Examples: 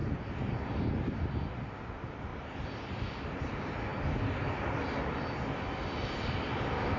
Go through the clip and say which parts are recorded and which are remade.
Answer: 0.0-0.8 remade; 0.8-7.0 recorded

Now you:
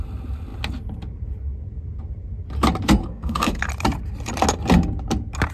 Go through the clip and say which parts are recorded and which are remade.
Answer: 0.0-3.0 recorded; 3.0-3.6 remade; 3.6-5.5 recorded

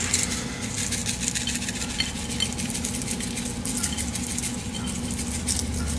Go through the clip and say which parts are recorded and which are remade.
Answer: 0.0-6.0 recorded